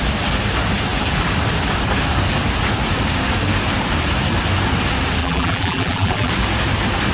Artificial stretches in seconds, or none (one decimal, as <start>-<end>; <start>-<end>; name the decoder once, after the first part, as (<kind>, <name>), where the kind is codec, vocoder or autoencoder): 5.2-6.3 (vocoder, BigVGAN v2)